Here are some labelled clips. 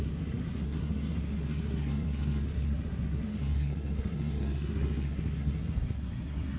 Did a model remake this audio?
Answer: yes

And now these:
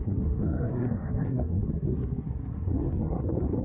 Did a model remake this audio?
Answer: yes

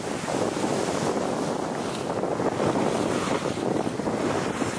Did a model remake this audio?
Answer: no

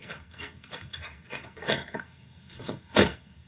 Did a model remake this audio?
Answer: yes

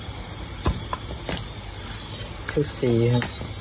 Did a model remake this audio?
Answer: no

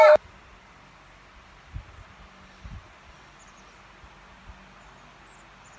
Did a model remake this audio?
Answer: no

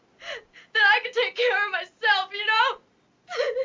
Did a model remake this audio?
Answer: no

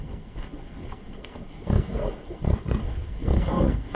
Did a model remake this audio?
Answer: yes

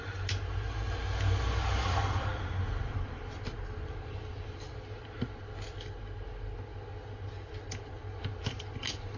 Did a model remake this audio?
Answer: no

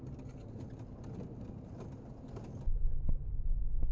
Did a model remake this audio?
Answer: no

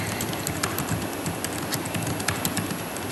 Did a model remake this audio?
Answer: no